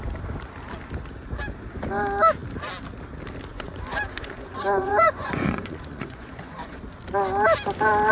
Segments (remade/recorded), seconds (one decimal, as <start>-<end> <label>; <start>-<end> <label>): 0.0-3.5 recorded; 3.5-6.8 remade; 6.8-8.1 recorded